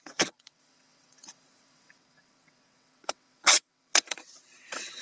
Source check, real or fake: fake